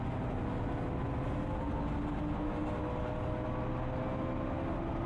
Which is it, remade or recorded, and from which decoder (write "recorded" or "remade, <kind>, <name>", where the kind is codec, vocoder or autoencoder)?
recorded